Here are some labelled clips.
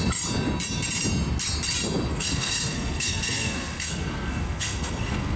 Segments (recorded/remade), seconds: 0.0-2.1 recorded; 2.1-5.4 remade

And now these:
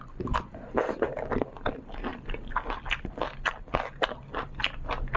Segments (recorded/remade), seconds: 0.0-5.2 recorded

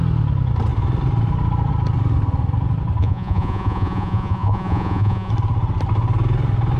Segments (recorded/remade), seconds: 0.0-3.0 recorded; 3.0-5.3 remade; 5.3-6.8 recorded